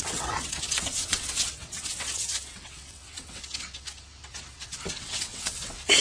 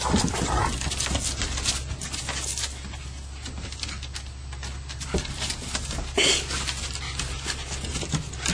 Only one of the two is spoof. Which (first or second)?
first